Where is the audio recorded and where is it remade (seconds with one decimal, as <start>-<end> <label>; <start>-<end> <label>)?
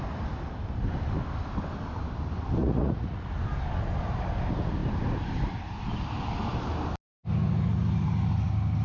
0.0-2.6 recorded; 2.6-3.3 remade; 3.3-8.8 recorded